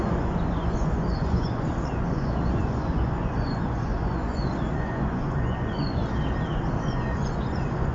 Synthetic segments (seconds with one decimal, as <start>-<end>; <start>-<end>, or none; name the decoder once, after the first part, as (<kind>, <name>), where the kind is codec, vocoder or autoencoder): 0.0-6.0 (vocoder, Vocos); 6.8-7.9